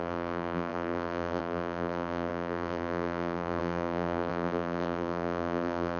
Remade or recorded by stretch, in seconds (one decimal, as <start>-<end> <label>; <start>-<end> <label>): 0.0-6.0 remade